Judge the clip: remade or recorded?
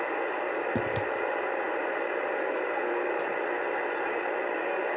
recorded